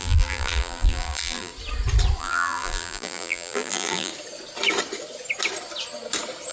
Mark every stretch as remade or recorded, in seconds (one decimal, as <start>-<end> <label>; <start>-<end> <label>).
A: 0.0-1.5 remade; 1.5-2.2 recorded; 2.2-4.1 remade; 4.1-6.5 recorded